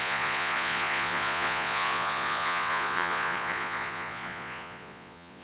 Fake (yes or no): yes